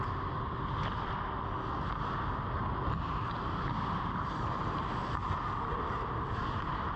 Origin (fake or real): real